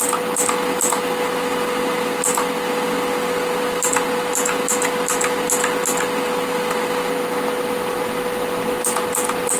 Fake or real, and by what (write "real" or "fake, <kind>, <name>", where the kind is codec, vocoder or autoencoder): real